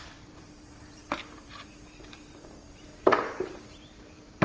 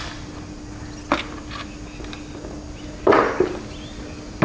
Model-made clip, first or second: first